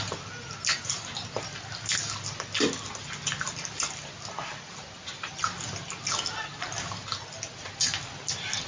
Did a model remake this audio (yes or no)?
no